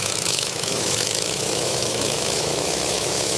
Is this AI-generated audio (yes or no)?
yes